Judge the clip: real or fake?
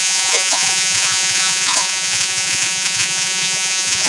fake